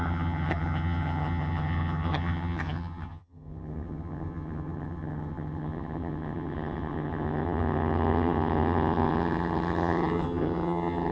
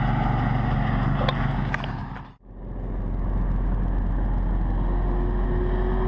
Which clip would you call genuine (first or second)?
second